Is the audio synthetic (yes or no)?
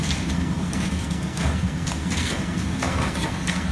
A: yes